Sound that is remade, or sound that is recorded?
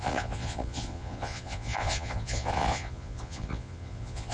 remade